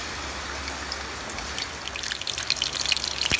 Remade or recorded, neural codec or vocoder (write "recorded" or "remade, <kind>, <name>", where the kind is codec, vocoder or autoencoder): recorded